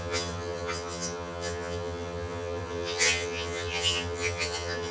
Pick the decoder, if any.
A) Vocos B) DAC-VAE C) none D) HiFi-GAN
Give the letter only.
D